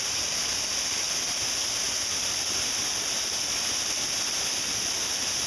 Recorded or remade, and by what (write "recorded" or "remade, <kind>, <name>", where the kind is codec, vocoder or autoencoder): recorded